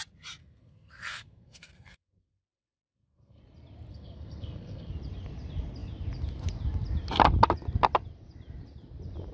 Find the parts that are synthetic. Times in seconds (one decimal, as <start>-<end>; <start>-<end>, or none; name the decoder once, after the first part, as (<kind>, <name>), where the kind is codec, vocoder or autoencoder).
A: 0.4-3.4 (codec, SNAC); 3.9-4.9